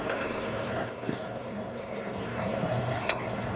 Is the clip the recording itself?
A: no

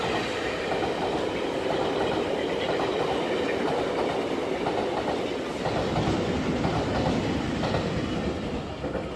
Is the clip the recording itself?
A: yes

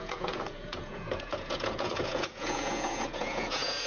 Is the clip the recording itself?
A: no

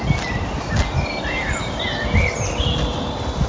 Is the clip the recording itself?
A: yes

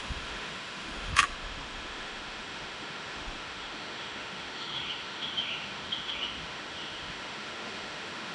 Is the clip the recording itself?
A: no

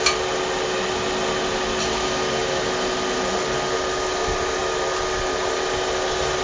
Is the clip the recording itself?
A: yes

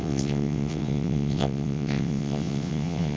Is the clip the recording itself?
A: no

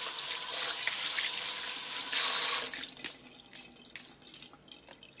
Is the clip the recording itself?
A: yes